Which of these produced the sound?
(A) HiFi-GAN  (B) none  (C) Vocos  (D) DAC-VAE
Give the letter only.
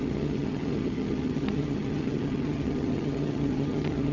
A